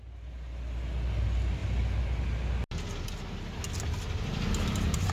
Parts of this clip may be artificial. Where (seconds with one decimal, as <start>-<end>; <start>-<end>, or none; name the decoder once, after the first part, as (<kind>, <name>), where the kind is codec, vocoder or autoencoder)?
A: none